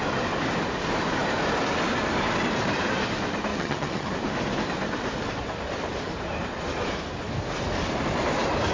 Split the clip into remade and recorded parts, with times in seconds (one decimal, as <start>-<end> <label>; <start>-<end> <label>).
0.0-3.5 recorded; 3.5-4.1 remade; 4.1-8.7 recorded